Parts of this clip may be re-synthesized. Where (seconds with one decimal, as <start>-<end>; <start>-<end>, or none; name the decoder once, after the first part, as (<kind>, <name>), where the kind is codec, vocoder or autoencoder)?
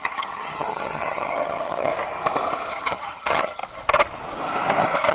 0.0-1.9 (vocoder, HiFi-GAN); 2.7-3.6